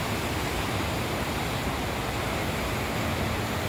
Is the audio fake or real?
real